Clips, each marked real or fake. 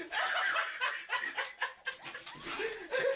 real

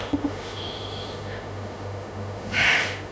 fake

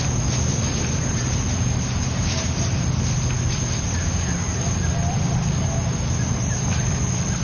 real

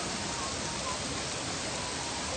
real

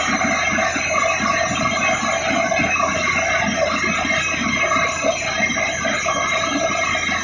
real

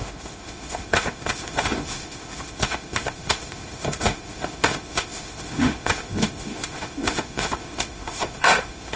fake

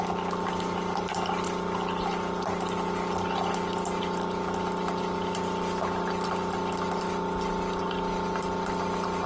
real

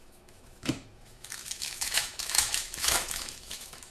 fake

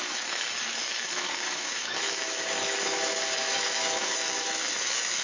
fake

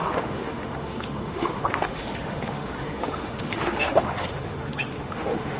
fake